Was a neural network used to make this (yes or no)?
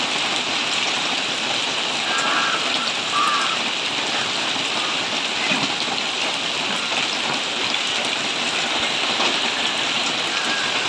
no